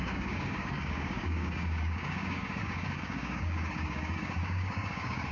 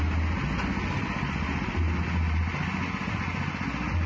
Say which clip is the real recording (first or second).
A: second